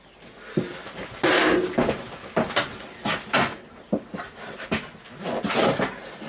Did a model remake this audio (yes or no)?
no